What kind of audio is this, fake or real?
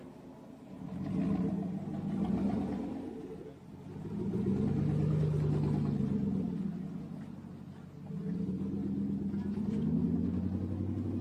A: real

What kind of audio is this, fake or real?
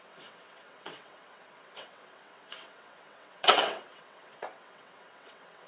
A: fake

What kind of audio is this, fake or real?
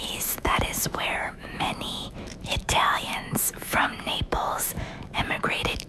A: fake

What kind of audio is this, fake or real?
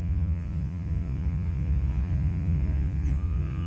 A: fake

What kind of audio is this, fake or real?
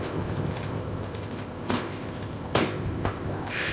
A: fake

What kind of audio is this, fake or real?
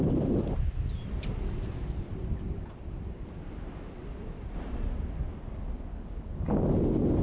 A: real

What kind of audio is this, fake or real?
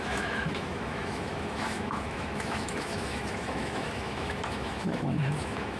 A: fake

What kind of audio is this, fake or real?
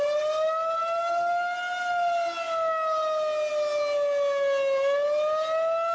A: real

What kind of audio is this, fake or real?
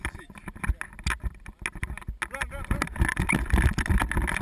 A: real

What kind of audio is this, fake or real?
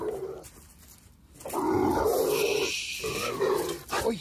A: real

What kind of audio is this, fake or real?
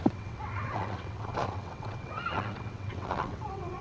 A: fake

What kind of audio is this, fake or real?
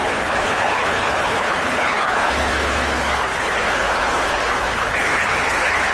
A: fake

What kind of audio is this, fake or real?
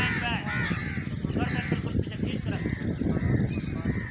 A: real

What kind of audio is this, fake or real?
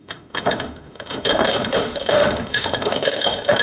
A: fake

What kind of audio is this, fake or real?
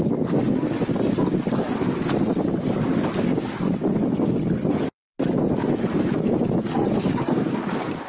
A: real